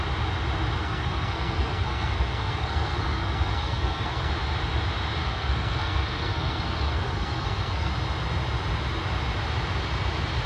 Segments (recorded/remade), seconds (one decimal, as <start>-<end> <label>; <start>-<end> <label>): 0.0-0.8 recorded; 0.8-4.3 remade; 4.3-5.2 recorded; 5.2-7.9 remade; 7.9-10.5 recorded